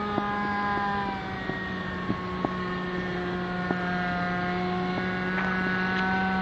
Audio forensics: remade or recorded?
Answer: recorded